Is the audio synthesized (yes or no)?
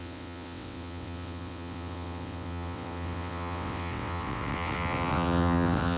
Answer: yes